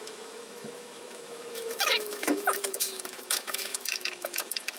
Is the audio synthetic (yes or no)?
yes